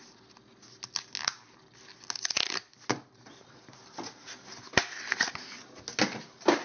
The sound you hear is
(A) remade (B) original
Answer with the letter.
B